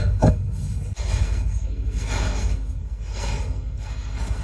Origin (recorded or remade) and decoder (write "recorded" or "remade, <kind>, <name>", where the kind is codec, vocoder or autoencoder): remade, codec, SNAC